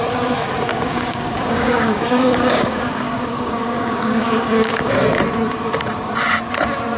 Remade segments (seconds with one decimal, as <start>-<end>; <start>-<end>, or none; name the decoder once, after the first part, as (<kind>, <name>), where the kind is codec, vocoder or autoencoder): 0.7-4.9 (codec, DAC)